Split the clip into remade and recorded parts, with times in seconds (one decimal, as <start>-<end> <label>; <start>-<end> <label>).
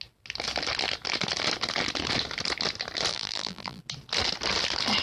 0.0-3.1 recorded; 3.1-3.8 remade; 3.8-5.0 recorded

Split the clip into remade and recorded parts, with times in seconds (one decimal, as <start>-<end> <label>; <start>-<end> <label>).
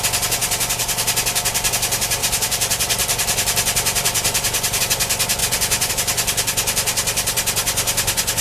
0.0-2.2 recorded; 2.2-4.8 remade; 4.8-5.4 recorded; 5.4-5.9 remade; 5.9-8.4 recorded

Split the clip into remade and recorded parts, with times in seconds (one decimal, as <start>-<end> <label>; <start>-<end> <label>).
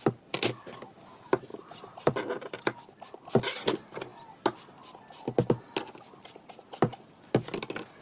0.0-1.5 recorded; 1.5-2.8 remade; 2.8-8.0 recorded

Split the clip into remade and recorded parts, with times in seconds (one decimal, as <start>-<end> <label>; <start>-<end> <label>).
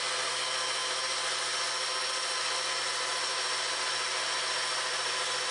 0.0-5.5 recorded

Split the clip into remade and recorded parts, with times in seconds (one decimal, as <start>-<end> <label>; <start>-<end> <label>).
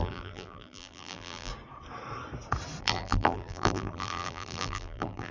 0.0-1.5 remade; 1.5-2.8 recorded; 2.8-5.3 remade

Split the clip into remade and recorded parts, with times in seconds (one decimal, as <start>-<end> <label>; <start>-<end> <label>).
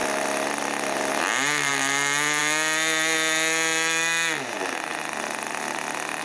0.0-6.2 recorded